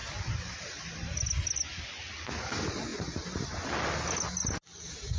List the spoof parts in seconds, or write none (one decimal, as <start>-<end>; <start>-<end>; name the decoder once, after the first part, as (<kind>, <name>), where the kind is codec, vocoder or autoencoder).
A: none